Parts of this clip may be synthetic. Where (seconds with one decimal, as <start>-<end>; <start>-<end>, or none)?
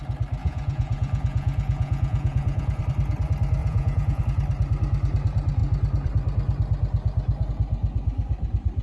0.4-2.8; 3.6-4.2